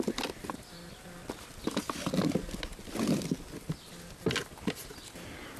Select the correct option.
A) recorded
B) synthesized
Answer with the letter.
A